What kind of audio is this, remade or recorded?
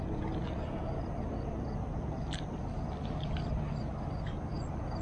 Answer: recorded